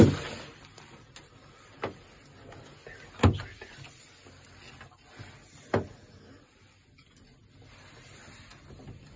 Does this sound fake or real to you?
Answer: real